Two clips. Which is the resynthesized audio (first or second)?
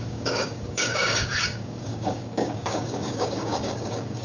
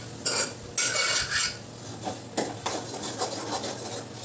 first